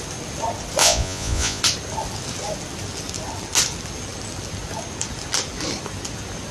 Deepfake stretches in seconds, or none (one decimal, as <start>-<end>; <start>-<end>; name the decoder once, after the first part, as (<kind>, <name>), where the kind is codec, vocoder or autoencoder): 0.8-1.6 (vocoder, Vocos)